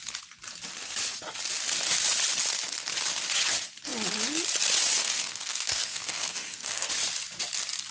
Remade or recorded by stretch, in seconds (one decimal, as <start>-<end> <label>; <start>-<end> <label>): 0.0-5.0 recorded; 5.0-6.9 remade; 6.9-7.9 recorded